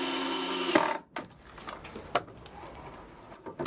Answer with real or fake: real